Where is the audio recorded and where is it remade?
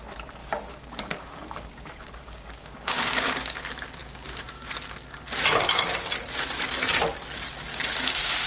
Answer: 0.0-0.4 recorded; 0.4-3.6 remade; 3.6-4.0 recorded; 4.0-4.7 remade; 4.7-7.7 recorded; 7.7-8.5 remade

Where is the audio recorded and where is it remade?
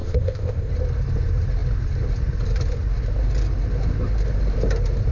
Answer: 0.0-0.7 remade; 0.7-5.1 recorded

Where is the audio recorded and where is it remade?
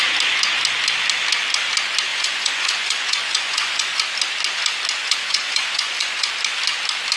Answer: 0.0-2.1 recorded; 2.1-4.0 remade; 4.0-5.0 recorded; 5.0-6.3 remade; 6.3-7.2 recorded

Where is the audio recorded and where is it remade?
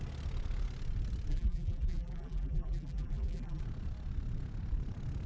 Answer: 0.0-1.3 recorded; 1.3-3.6 remade; 3.6-5.3 recorded